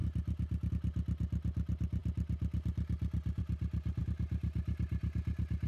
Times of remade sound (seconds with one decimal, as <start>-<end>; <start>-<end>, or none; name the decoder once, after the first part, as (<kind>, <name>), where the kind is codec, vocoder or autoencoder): none